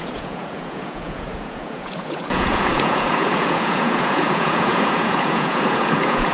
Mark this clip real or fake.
fake